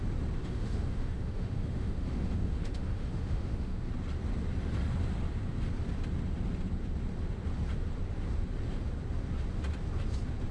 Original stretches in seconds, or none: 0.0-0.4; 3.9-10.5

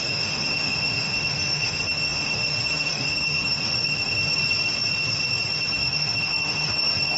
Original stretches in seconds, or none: 4.2-5.5

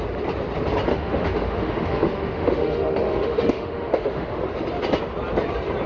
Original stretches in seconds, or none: 0.0-0.9; 4.4-5.9

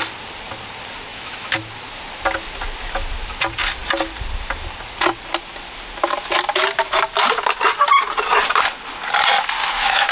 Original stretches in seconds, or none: 0.0-1.1; 1.6-9.6

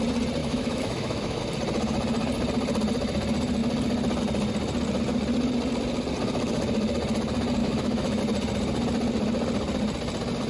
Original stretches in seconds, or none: 0.0-0.4; 1.4-7.6; 8.2-10.5

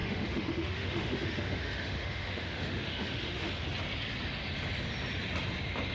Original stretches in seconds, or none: 3.5-5.9

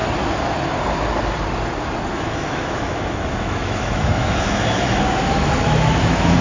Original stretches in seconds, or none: 0.0-2.1

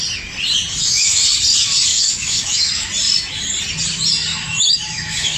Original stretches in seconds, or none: 0.0-0.8; 1.3-1.9; 2.9-4.3